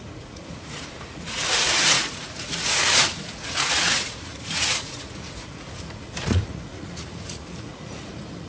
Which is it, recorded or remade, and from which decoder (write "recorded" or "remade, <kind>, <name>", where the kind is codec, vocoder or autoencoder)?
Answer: remade, vocoder, Vocos